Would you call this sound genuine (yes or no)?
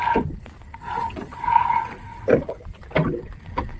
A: yes